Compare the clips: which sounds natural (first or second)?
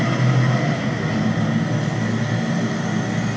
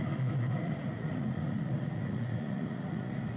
first